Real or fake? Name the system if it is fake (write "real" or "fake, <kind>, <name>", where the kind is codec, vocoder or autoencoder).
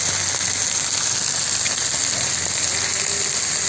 real